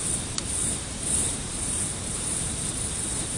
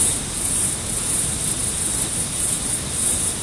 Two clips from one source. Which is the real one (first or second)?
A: second